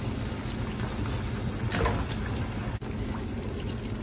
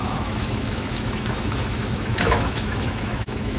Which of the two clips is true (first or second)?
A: first